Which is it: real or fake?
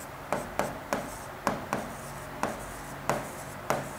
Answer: real